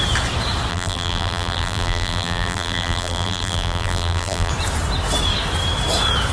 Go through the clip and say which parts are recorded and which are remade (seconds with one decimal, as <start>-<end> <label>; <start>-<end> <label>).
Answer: 0.0-0.7 recorded; 0.7-4.5 remade; 4.5-6.3 recorded